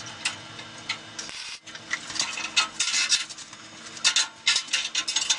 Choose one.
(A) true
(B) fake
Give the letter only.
A